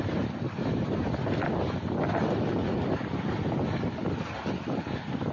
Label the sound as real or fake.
real